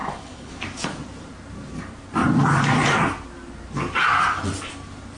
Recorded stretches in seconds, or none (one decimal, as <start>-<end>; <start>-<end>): 0.5-5.2